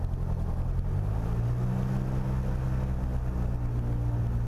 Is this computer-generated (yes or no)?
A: no